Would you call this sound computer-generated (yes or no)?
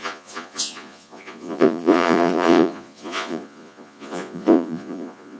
yes